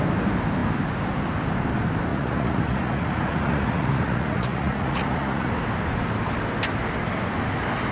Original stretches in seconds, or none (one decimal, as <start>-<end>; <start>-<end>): 0.0-2.1; 5.5-7.9